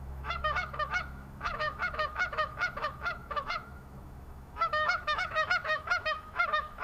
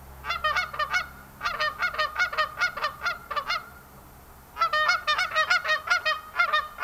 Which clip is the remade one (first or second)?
first